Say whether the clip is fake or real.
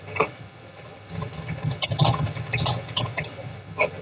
fake